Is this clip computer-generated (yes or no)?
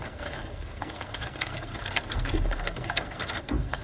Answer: yes